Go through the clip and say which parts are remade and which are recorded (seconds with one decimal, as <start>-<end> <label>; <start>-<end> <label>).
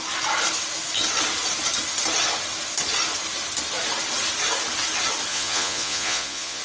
0.0-5.3 recorded; 5.3-6.6 remade